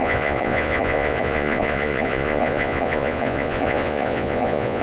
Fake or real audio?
fake